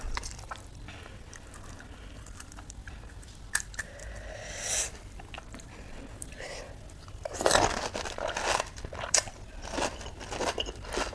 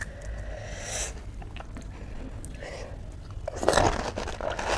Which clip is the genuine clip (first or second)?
second